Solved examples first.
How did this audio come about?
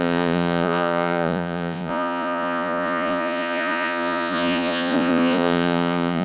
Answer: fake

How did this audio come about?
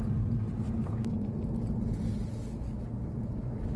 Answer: real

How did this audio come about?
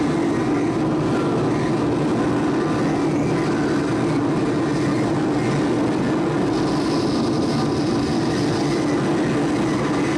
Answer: real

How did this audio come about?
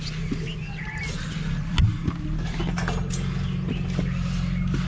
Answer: real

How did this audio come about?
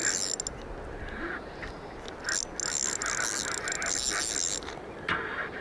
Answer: real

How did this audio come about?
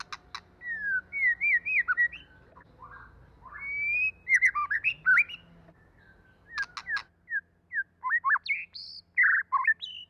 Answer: real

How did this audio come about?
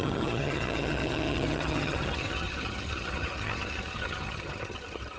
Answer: fake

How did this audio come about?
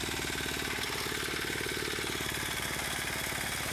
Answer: real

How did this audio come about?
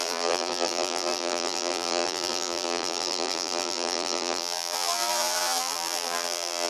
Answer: fake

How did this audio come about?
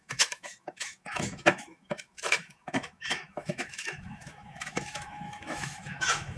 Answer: fake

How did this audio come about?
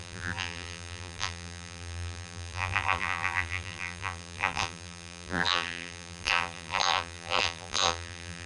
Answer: fake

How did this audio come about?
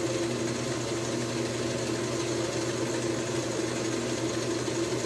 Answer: real